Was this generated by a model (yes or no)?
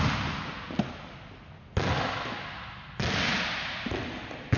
no